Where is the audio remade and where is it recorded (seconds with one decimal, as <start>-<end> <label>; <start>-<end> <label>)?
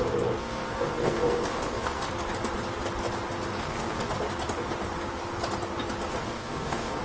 0.0-0.4 recorded; 0.4-2.1 remade; 2.1-3.6 recorded; 3.6-4.1 remade; 4.1-6.1 recorded; 6.1-7.0 remade